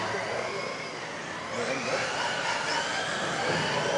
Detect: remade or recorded recorded